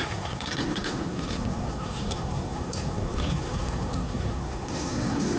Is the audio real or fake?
fake